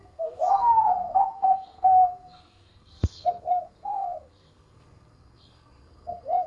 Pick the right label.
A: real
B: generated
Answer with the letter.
B